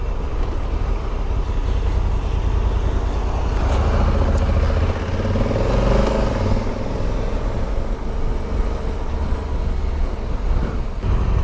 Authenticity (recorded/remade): recorded